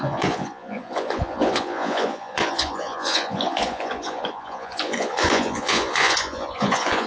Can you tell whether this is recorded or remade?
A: remade